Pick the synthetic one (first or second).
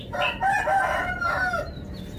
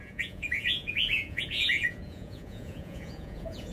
second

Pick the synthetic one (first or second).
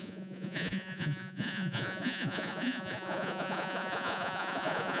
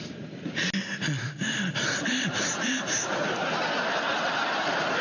first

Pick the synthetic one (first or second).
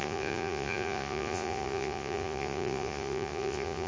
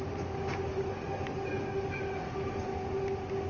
first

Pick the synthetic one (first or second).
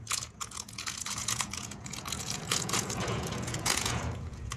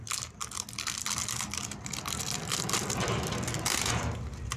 first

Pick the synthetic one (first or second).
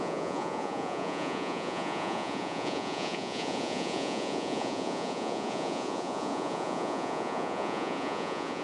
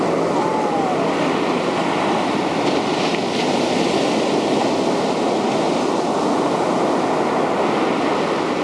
first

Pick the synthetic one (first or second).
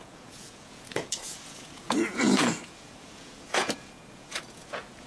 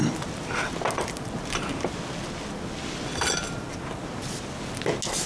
first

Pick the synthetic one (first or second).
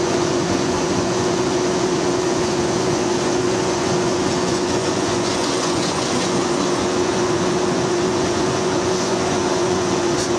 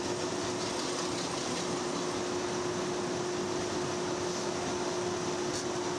first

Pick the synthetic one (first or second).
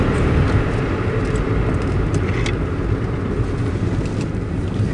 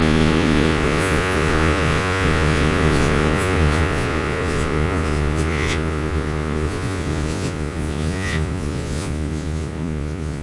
second